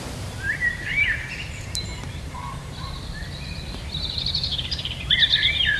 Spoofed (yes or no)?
yes